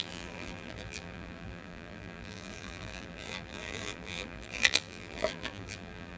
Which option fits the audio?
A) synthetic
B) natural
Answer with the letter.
A